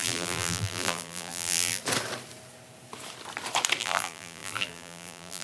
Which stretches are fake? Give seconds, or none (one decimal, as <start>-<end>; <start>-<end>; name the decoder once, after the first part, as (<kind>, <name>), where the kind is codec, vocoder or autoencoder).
0.0-1.8 (vocoder, BigVGAN v2); 3.8-5.4